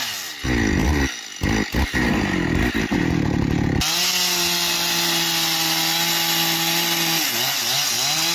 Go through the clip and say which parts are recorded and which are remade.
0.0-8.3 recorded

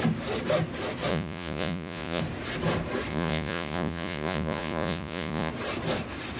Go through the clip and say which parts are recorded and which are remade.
0.0-1.1 recorded; 1.1-2.2 remade; 2.2-3.1 recorded; 3.1-5.5 remade; 5.5-6.4 recorded

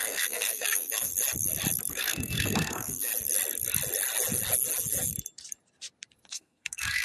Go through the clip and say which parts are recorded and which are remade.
0.0-1.1 remade; 1.1-1.9 recorded; 1.9-3.1 remade; 3.1-6.3 recorded; 6.3-7.0 remade